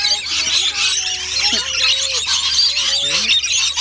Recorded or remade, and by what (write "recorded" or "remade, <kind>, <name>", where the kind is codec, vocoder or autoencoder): recorded